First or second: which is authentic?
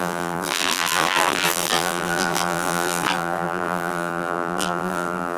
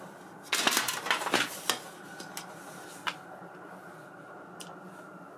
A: second